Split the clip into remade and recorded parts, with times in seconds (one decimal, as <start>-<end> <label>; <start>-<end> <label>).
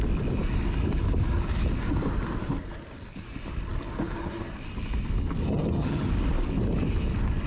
0.0-5.4 recorded; 5.4-6.1 remade; 6.1-7.5 recorded